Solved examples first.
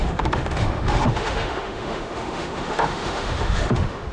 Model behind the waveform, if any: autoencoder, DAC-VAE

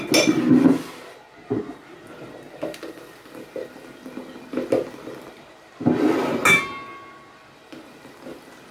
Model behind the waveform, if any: none